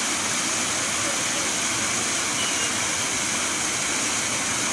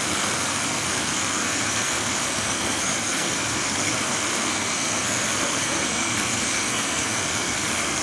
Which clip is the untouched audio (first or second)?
first